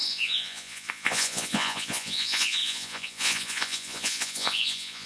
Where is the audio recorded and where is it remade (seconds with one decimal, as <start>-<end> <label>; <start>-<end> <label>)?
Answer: 0.0-5.1 remade